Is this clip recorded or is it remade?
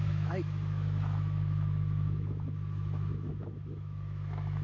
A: remade